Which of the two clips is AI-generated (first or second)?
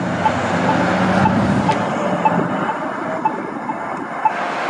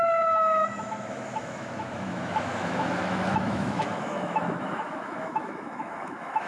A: second